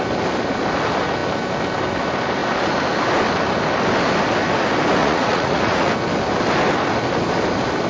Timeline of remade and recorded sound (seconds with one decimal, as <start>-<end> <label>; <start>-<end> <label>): 0.0-5.0 recorded; 5.0-5.9 remade; 5.9-7.9 recorded